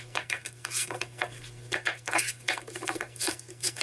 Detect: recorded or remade remade